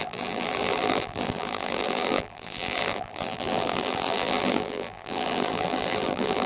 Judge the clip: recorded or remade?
remade